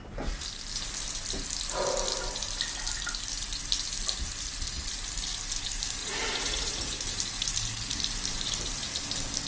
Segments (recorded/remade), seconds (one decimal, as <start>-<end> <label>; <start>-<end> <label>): 0.0-6.0 recorded; 6.0-6.9 remade; 6.9-9.5 recorded